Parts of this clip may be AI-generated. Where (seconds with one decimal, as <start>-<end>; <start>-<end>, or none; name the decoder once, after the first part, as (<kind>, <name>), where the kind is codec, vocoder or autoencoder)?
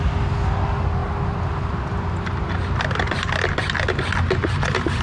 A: none